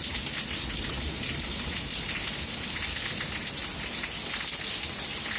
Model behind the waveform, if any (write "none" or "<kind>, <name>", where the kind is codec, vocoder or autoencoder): none